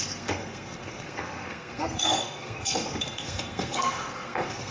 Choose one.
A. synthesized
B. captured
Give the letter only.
A